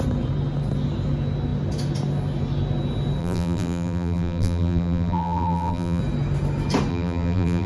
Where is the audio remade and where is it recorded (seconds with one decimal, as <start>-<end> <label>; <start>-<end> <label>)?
0.0-3.2 recorded; 3.2-6.0 remade; 6.0-6.9 recorded; 6.9-7.7 remade